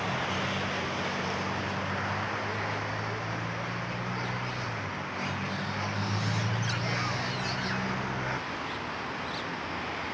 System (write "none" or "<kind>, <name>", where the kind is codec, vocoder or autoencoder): none